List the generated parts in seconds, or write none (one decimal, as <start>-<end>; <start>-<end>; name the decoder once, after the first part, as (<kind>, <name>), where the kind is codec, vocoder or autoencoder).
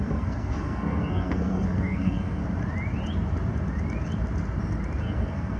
0.0-2.4 (codec, SNAC); 5.0-5.6